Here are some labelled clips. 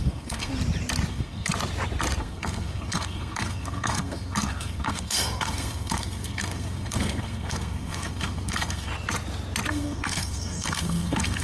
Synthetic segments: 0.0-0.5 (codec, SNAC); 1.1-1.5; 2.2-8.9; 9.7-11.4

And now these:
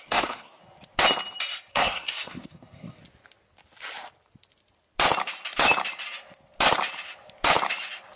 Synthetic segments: 0.0-0.6 (codec, SNAC); 1.7-3.0

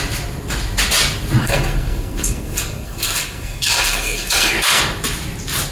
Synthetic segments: 1.4-4.8 (codec, SNAC)

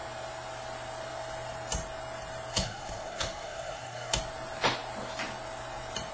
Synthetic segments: 2.5-4.2 (codec, SNAC)